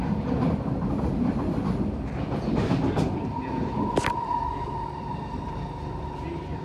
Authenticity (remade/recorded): recorded